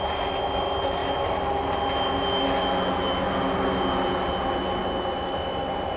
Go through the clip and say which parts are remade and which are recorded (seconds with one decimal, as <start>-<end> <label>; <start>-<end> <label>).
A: 0.0-6.0 recorded